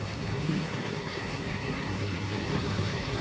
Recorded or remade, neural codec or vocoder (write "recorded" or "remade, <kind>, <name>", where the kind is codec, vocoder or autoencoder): remade, codec, SNAC